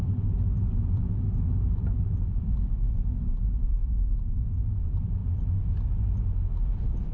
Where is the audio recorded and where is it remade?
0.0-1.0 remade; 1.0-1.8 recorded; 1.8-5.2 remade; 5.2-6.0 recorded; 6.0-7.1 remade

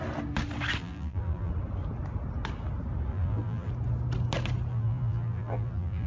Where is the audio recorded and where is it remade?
0.0-0.8 recorded; 0.8-1.5 remade; 1.5-3.1 recorded; 3.1-3.7 remade; 3.7-4.7 recorded; 4.7-6.1 remade